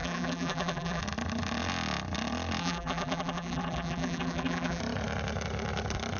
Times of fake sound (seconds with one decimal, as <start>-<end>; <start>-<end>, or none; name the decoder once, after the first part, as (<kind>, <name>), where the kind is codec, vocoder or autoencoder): 0.0-1.0 (vocoder, BigVGAN v2); 2.6-4.8